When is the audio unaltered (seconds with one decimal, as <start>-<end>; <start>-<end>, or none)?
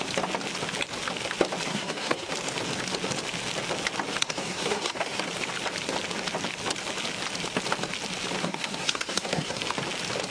0.0-1.7; 2.3-4.2; 5.2-8.4; 9.6-10.3